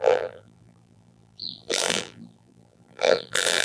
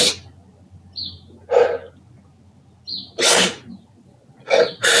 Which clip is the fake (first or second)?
first